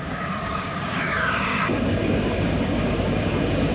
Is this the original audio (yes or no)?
no